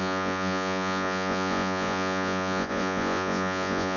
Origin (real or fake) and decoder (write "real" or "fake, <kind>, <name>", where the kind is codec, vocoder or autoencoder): fake, vocoder, Vocos